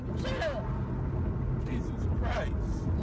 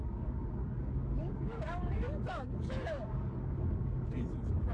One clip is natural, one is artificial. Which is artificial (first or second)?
second